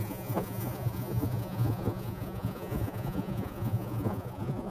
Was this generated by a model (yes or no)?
yes